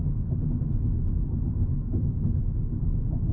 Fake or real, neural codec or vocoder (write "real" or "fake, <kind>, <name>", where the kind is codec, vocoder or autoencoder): real